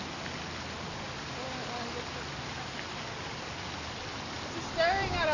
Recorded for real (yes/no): yes